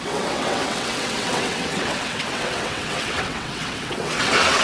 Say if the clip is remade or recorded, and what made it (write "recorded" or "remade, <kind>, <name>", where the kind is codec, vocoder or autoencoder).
remade, vocoder, WaveNeXt